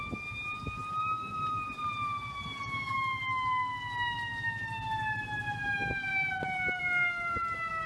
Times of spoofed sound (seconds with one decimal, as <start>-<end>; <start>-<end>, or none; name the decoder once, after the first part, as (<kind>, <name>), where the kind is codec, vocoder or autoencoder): 0.8-1.8 (vocoder, BigVGAN v2); 6.1-6.8